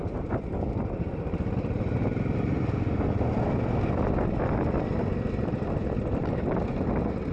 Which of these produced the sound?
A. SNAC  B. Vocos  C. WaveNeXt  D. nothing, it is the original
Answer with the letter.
D